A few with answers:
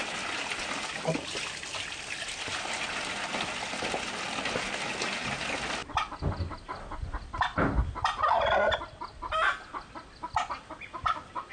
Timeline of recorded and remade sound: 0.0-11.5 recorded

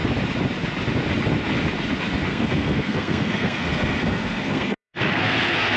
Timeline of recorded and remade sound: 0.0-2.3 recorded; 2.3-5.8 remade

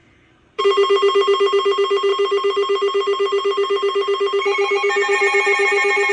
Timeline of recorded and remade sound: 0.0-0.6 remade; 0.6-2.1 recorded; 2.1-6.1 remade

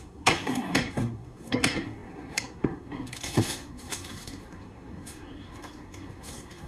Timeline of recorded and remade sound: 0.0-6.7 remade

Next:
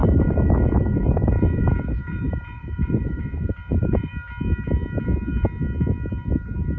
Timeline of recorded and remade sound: 0.0-4.1 remade; 4.1-6.8 recorded